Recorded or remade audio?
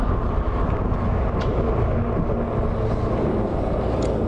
recorded